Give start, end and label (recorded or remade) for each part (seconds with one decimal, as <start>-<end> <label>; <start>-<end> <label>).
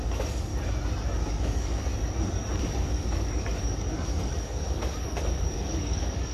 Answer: 0.0-0.5 remade; 0.5-1.3 recorded; 1.3-1.9 remade; 1.9-2.6 recorded; 2.6-6.3 remade